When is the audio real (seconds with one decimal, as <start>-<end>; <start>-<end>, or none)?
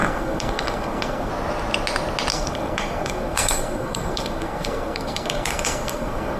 1.3-2.3